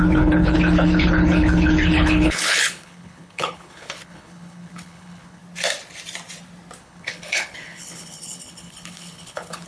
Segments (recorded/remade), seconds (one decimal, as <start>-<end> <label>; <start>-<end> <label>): 0.0-5.4 remade; 5.4-6.8 recorded; 6.8-9.7 remade